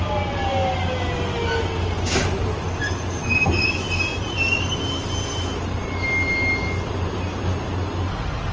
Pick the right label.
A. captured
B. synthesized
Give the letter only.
A